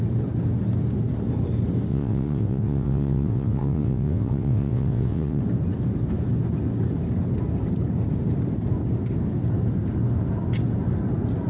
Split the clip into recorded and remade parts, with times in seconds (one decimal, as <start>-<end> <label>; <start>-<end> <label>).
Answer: 0.0-1.9 recorded; 1.9-5.4 remade; 5.4-11.5 recorded